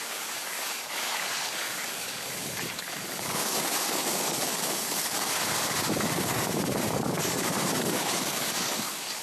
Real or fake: fake